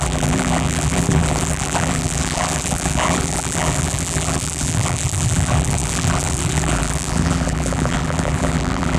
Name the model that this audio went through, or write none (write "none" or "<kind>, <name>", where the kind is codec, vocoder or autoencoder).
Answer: vocoder, BigVGAN v2